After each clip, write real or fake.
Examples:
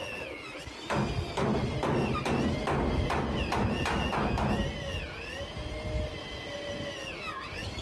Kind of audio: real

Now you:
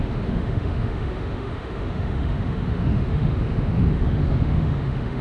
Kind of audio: fake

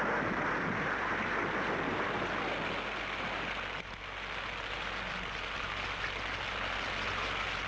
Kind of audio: real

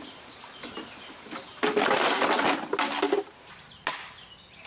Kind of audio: real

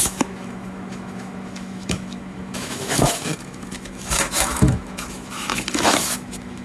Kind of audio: fake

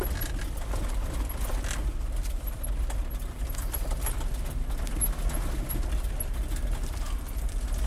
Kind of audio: real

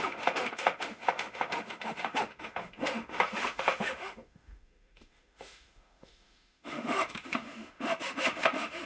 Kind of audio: fake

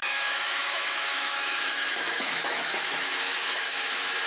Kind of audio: fake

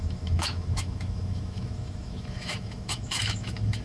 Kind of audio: fake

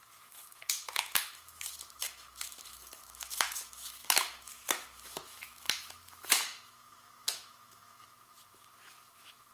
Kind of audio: fake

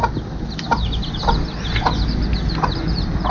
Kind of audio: real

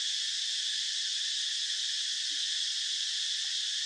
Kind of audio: real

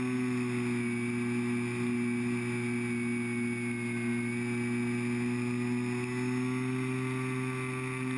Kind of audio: real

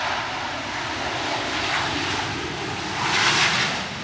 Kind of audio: real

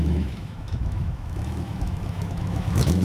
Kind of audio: fake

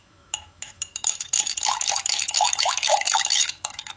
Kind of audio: fake